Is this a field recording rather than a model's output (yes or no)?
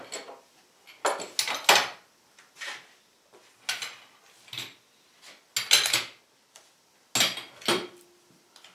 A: yes